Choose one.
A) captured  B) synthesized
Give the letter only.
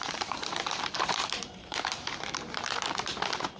B